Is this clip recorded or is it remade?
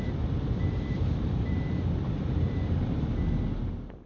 remade